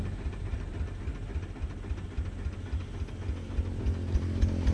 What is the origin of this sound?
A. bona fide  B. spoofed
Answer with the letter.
A